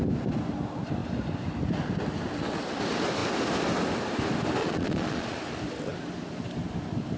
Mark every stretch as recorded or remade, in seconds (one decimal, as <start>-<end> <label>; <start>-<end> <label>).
0.0-4.6 recorded; 4.6-5.4 remade; 5.4-7.2 recorded